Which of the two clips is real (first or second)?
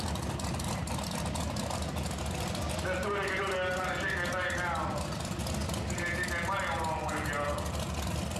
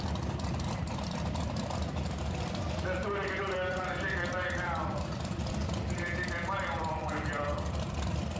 first